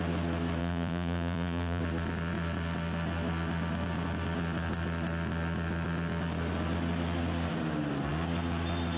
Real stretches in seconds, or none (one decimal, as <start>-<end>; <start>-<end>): 0.0-0.6; 1.8-9.0